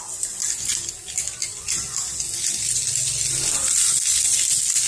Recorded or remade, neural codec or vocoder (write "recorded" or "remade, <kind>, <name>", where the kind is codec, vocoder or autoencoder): recorded